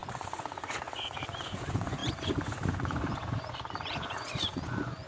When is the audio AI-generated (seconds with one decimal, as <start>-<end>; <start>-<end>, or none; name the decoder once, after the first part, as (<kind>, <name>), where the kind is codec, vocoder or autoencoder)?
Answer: 0.0-5.1 (vocoder, Vocos)